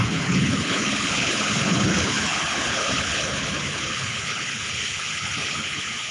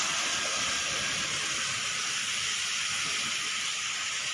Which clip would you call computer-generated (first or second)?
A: first